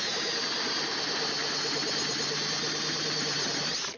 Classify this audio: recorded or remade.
recorded